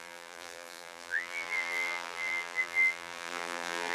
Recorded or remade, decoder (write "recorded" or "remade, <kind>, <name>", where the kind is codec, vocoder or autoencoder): remade, vocoder, BigVGAN v2